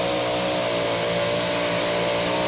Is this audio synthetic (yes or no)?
no